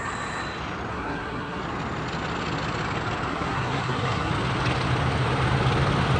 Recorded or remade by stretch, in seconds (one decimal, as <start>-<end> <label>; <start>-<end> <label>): 0.0-0.9 recorded; 0.9-1.6 remade; 1.6-3.3 recorded; 3.3-4.3 remade; 4.3-6.2 recorded